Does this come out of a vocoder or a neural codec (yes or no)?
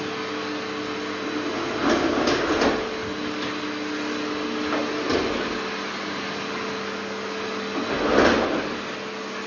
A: no